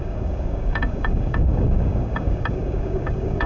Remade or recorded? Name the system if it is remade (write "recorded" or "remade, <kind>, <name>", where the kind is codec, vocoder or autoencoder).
remade, codec, DAC